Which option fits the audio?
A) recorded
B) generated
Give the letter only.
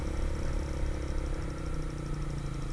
A